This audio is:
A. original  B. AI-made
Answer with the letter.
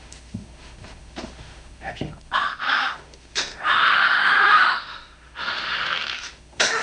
B